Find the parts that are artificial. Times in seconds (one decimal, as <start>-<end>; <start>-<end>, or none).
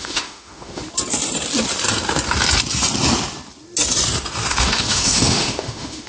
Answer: 0.0-0.8; 4.5-6.1